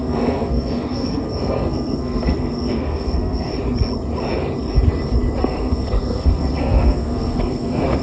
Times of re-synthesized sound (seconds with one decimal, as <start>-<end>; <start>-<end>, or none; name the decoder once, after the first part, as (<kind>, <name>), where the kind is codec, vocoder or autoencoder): 0.0-3.5 (codec, SNAC); 5.4-8.0